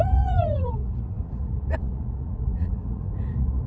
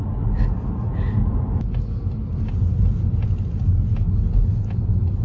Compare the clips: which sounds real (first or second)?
second